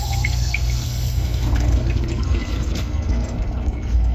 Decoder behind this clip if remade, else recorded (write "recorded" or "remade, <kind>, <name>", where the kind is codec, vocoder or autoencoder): remade, codec, SNAC